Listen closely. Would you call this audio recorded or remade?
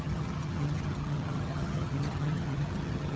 remade